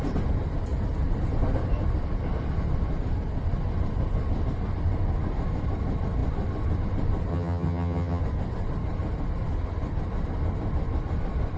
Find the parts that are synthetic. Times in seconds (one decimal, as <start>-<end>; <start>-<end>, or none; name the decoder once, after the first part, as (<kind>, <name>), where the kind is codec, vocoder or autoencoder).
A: 7.3-8.2 (vocoder, HiFi-GAN)